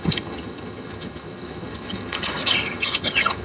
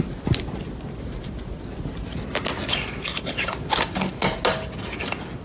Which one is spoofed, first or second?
first